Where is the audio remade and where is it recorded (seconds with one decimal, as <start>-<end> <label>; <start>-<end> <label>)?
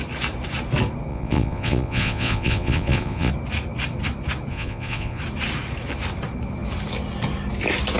0.0-1.1 recorded; 1.1-3.3 remade; 3.3-4.5 recorded; 4.5-5.2 remade; 5.2-8.0 recorded